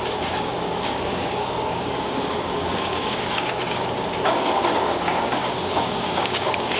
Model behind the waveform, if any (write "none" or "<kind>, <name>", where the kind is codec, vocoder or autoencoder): codec, DAC